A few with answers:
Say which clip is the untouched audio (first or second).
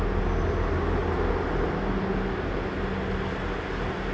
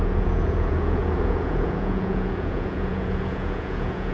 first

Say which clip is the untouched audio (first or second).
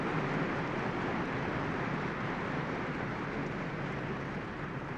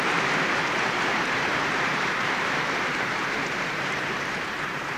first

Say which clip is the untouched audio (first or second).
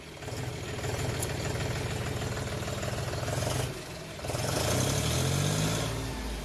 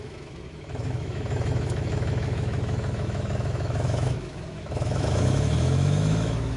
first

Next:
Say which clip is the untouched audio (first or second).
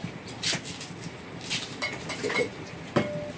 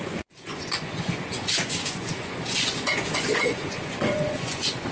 first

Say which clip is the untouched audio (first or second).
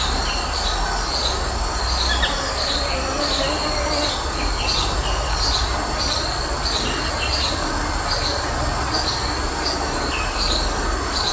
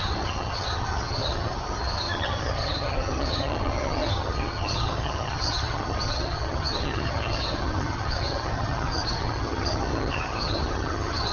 first